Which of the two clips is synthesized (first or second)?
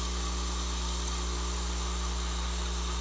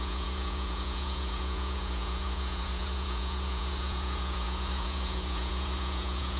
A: second